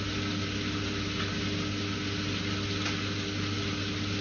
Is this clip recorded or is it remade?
recorded